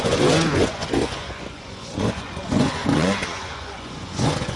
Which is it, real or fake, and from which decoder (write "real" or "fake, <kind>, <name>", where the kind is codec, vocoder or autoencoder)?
fake, vocoder, Vocos